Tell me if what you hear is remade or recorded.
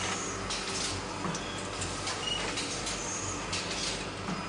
recorded